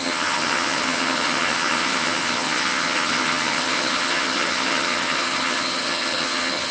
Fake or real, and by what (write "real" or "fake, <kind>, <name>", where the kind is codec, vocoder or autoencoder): fake, vocoder, HiFi-GAN